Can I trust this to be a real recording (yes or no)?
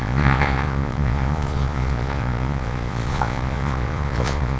no